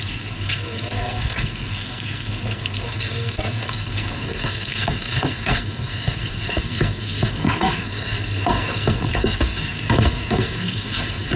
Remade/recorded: remade